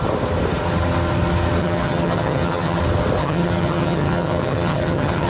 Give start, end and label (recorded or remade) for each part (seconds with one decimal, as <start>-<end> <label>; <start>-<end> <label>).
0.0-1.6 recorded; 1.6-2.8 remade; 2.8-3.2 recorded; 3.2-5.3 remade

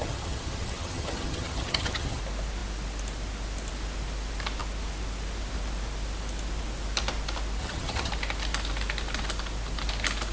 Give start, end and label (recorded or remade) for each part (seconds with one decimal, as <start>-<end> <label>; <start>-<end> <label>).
0.0-2.2 remade; 2.2-7.6 recorded; 7.6-8.1 remade; 8.1-10.3 recorded

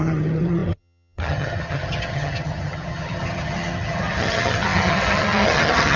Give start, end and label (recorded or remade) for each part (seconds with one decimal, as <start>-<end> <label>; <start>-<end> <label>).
0.0-6.0 remade